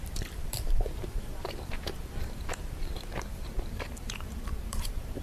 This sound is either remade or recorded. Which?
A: remade